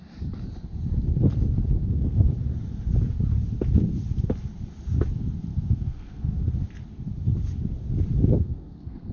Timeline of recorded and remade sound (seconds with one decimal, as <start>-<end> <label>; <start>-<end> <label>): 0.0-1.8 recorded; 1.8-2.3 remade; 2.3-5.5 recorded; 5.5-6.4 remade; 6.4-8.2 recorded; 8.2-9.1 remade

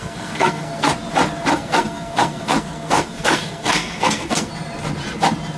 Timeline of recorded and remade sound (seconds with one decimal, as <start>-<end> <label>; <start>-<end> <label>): 0.0-0.9 remade; 0.9-1.5 recorded; 1.5-4.5 remade; 4.5-5.6 recorded

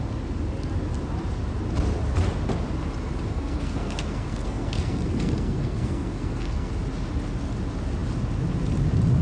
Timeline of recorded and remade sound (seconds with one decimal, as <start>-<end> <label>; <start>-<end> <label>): 0.0-3.3 recorded; 3.3-6.7 remade; 6.7-9.2 recorded

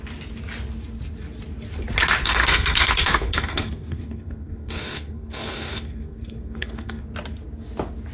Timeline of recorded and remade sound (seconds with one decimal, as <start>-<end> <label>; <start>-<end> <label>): 0.0-2.2 recorded; 2.2-7.0 remade; 7.0-8.1 recorded

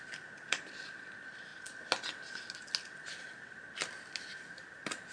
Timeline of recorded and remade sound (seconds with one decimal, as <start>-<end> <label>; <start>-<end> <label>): 0.0-5.1 recorded

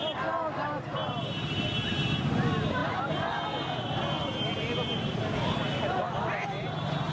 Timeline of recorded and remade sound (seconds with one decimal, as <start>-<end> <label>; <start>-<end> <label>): 0.0-7.1 recorded

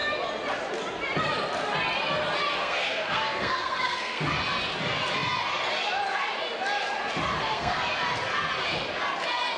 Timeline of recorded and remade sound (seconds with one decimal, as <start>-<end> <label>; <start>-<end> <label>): 0.0-2.6 recorded; 2.6-4.2 remade; 4.2-7.4 recorded; 7.4-7.9 remade; 7.9-9.6 recorded

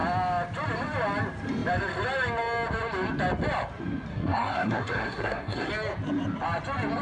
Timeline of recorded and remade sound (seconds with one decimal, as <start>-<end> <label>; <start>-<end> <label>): 0.0-4.1 recorded; 4.1-5.7 remade; 5.7-7.0 recorded